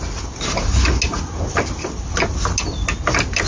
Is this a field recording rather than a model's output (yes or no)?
yes